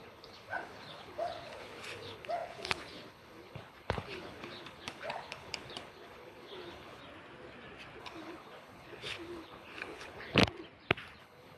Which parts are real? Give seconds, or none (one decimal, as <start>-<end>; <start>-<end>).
7.0-8.0; 10.4-11.2